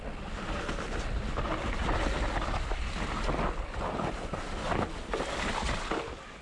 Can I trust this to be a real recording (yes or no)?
yes